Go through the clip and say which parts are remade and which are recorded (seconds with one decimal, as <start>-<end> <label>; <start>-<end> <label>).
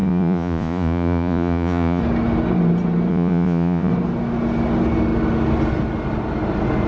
0.0-2.0 remade; 2.0-3.1 recorded; 3.1-3.9 remade; 3.9-6.9 recorded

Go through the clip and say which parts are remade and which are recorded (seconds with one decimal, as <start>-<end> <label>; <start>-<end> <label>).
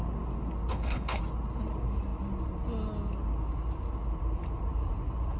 0.0-0.7 recorded; 0.7-1.2 remade; 1.2-5.4 recorded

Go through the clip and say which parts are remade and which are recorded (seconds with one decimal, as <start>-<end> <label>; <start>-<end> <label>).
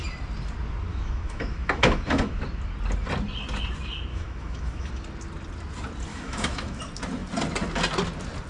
0.0-0.9 recorded; 0.9-2.4 remade; 2.4-4.1 recorded; 4.1-4.9 remade; 4.9-6.1 recorded; 6.1-6.8 remade; 6.8-8.5 recorded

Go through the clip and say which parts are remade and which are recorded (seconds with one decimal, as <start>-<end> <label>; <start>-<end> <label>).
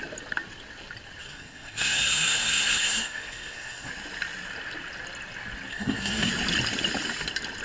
0.0-1.2 recorded; 1.2-3.9 remade; 3.9-5.7 recorded; 5.7-6.3 remade; 6.3-7.6 recorded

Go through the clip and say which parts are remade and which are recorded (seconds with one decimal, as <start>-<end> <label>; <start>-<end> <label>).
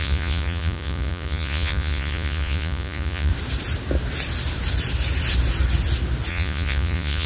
0.0-3.3 remade; 3.3-6.3 recorded; 6.3-7.3 remade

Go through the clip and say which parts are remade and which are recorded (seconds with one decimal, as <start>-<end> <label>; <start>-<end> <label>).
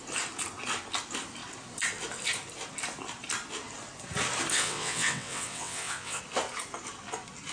0.0-4.5 recorded; 4.5-6.2 remade; 6.2-7.5 recorded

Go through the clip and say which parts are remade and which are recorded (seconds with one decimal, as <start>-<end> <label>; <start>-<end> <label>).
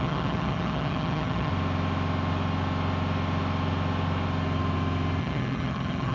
0.0-1.5 remade; 1.5-5.2 recorded; 5.2-6.1 remade